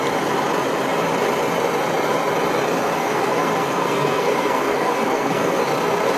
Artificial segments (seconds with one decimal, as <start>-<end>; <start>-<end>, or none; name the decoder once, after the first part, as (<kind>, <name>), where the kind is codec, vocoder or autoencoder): 3.0-5.6 (codec, SNAC)